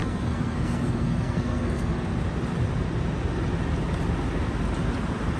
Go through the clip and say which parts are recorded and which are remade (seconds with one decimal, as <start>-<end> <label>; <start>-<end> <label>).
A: 0.0-2.1 remade; 2.1-5.4 recorded